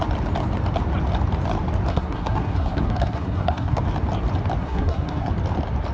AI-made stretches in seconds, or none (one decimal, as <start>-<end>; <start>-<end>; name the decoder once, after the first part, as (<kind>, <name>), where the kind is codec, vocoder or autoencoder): 1.9-3.8 (codec, SNAC); 4.6-5.3